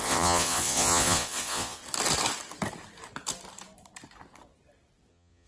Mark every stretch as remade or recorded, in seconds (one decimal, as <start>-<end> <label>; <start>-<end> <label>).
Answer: 0.0-1.8 remade; 1.8-5.1 recorded; 5.1-5.5 remade